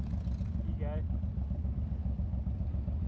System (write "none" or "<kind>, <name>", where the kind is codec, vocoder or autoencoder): none